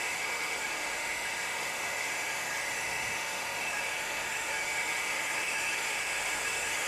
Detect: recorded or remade remade